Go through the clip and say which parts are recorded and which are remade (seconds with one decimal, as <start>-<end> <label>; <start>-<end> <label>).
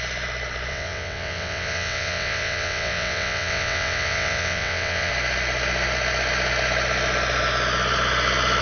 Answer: 0.0-0.7 recorded; 0.7-5.1 remade; 5.1-8.6 recorded